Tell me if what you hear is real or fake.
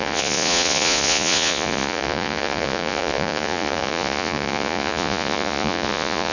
fake